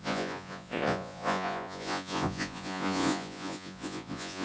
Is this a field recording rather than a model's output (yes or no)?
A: no